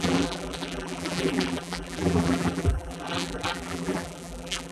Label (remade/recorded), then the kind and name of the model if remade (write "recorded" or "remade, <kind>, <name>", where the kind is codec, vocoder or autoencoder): remade, vocoder, BigVGAN v2